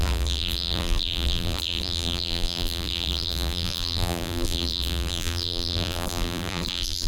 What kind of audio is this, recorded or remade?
remade